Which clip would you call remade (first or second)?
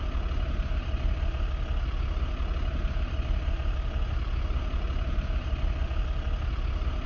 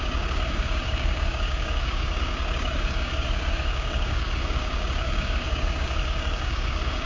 second